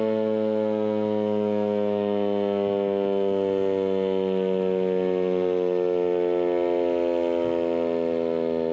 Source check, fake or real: real